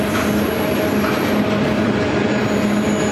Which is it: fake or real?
real